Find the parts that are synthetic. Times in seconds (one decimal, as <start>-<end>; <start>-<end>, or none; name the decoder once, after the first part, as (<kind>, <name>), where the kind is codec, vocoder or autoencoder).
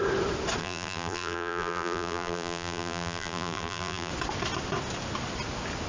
0.6-4.1 (vocoder, BigVGAN v2)